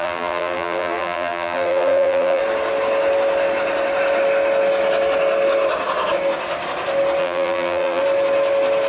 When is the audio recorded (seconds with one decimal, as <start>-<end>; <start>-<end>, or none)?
2.4-7.2; 8.0-8.9